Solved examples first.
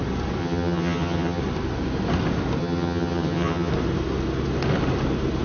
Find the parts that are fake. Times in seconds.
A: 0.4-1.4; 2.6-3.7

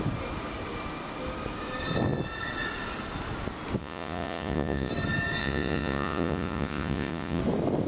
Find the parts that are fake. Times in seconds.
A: 3.8-4.9; 5.4-7.4